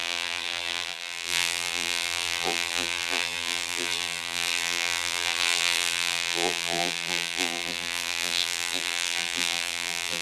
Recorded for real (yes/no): no